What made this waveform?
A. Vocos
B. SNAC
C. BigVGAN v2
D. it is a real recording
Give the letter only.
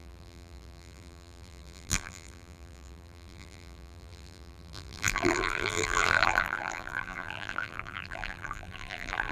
C